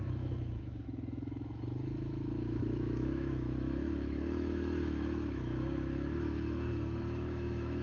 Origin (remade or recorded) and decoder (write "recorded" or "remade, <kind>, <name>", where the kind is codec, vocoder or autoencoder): remade, autoencoder, DAC-VAE